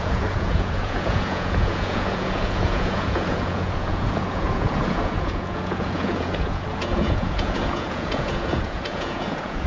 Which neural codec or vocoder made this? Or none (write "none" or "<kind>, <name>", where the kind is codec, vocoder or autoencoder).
vocoder, Vocos